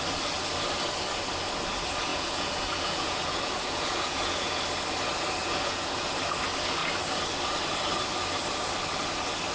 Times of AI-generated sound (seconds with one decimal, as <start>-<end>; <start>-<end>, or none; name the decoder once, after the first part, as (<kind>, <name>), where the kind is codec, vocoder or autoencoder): 2.1-4.6 (vocoder, Vocos); 5.4-6.1